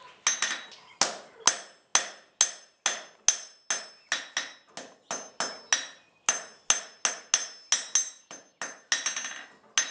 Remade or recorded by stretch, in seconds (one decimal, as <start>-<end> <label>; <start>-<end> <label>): 0.0-9.9 recorded